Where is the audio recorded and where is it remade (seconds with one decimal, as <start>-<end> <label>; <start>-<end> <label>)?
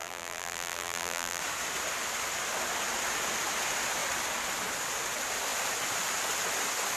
0.0-1.4 remade; 1.4-7.0 recorded